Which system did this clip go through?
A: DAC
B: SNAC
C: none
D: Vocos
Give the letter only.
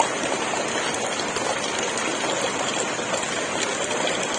C